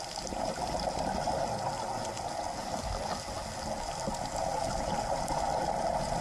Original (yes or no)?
yes